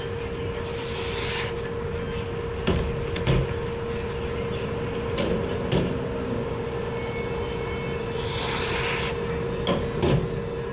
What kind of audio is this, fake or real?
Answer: real